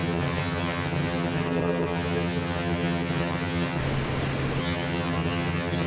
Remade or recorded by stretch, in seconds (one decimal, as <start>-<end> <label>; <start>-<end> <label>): 0.0-3.8 remade; 3.8-4.6 recorded; 4.6-5.9 remade